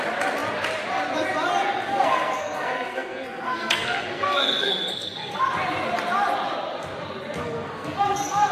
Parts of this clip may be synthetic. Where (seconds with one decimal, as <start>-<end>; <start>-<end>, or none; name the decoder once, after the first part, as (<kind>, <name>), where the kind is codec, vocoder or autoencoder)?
1.9-5.4 (codec, SNAC); 7.4-8.5